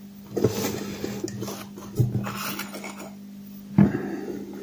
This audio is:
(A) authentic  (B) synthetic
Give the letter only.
A